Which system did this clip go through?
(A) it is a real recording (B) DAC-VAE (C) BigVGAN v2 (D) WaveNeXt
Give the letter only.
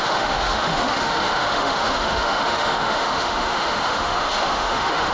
B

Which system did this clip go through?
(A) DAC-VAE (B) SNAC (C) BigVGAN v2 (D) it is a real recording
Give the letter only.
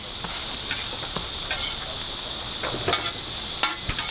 D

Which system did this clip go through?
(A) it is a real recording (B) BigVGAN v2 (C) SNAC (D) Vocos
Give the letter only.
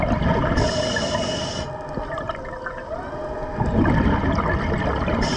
A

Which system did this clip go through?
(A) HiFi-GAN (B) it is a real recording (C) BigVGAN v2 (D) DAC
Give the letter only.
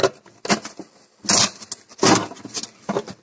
B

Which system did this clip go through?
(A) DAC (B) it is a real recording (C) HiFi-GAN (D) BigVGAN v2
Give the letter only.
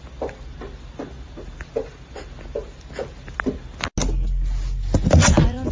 B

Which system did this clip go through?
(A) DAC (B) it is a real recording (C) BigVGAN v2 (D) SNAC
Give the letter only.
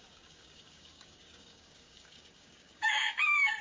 A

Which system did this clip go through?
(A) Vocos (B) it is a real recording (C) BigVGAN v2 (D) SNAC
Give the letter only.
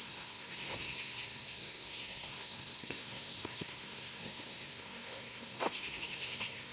D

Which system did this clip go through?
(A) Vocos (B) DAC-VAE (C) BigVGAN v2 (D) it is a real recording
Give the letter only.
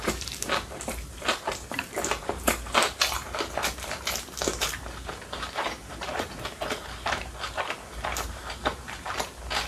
C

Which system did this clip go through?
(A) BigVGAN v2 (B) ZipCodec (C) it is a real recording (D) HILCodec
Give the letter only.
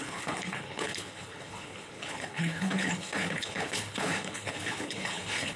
D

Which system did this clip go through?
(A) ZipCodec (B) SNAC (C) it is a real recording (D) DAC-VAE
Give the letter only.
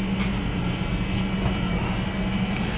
C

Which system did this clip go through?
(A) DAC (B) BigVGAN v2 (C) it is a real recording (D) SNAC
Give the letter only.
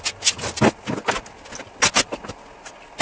C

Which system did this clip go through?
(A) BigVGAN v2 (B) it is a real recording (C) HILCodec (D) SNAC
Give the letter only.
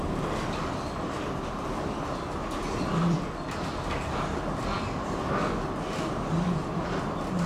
B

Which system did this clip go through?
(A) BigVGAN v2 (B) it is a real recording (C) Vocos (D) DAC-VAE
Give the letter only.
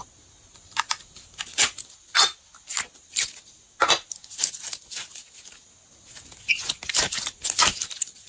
B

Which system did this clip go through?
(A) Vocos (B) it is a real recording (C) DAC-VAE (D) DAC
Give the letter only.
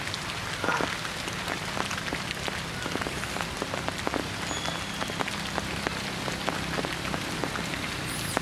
B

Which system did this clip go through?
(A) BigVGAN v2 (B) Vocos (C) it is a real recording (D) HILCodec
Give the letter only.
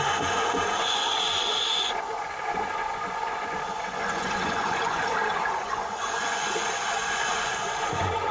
B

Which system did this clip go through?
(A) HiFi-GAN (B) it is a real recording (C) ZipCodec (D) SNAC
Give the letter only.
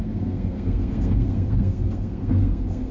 D